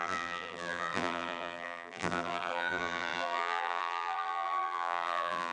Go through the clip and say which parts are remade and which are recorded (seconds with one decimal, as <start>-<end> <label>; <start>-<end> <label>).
0.0-5.5 remade